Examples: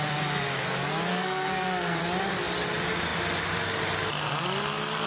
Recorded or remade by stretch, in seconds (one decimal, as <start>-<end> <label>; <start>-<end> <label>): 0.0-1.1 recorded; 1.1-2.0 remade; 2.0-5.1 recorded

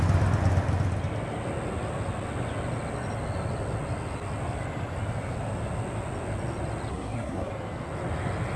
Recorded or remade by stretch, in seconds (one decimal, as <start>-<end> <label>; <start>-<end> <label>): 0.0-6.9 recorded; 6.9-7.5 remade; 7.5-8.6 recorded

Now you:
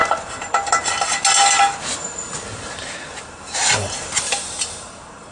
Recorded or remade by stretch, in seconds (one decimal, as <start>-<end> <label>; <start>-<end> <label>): 0.0-3.6 recorded; 3.6-5.3 remade

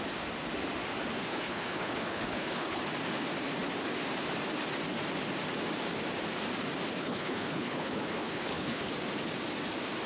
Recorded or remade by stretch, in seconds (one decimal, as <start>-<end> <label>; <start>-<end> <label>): 0.0-1.3 recorded; 1.3-2.8 remade; 2.8-7.0 recorded; 7.0-8.9 remade; 8.9-10.1 recorded

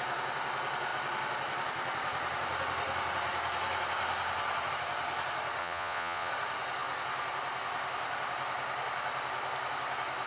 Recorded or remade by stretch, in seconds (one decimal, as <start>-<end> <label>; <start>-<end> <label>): 0.0-5.6 recorded; 5.6-6.3 remade; 6.3-10.3 recorded

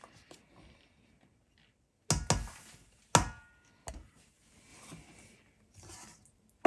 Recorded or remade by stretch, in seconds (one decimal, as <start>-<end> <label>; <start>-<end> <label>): 0.0-6.7 recorded

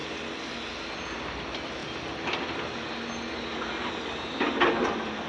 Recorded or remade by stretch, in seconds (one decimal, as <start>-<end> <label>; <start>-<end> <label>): 0.0-5.3 recorded